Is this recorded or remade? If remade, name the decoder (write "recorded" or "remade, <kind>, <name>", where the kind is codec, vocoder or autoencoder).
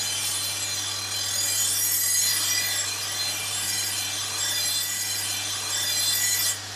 recorded